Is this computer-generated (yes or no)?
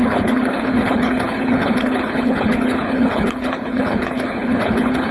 yes